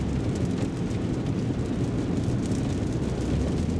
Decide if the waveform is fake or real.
real